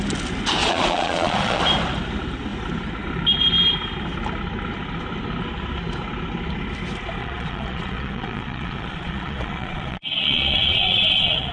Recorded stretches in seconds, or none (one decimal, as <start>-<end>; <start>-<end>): 0.0-0.6; 1.6-7.2